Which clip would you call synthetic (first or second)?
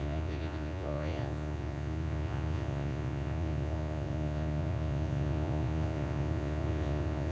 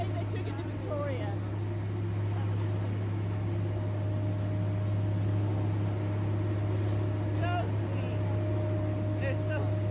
first